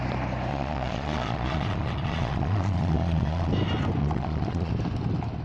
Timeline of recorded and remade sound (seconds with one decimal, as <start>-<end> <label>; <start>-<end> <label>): 0.0-0.5 recorded; 0.5-3.5 remade; 3.5-4.0 recorded; 4.0-4.7 remade; 4.7-5.4 recorded